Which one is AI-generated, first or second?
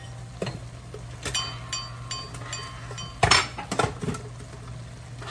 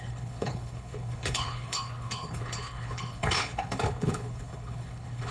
second